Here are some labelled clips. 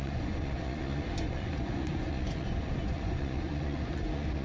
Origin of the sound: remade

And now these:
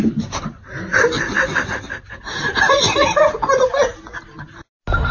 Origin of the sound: recorded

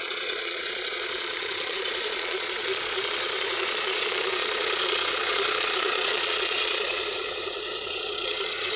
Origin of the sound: remade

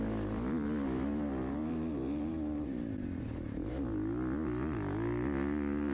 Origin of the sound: recorded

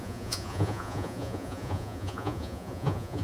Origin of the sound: remade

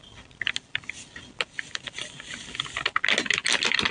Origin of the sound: recorded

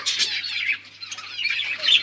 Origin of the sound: recorded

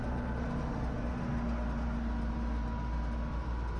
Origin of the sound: recorded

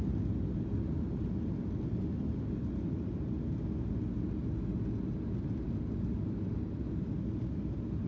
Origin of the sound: recorded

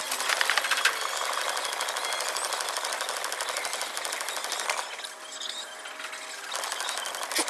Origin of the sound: recorded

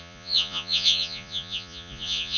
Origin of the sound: remade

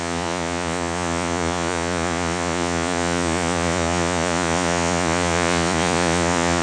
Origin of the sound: remade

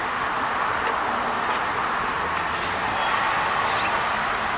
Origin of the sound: recorded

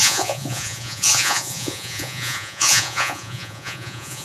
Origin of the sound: remade